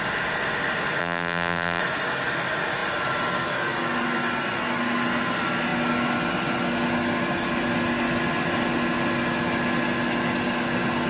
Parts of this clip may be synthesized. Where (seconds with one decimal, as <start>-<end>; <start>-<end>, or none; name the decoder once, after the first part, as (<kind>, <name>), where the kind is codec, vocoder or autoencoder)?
1.0-1.8 (vocoder, BigVGAN v2)